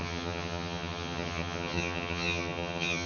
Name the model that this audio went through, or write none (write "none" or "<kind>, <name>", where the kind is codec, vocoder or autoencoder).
vocoder, HiFi-GAN